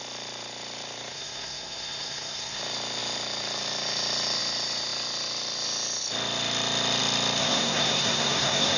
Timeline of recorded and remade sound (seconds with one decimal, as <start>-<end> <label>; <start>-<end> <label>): 0.0-1.1 recorded; 1.1-2.6 remade; 2.6-7.4 recorded; 7.4-8.8 remade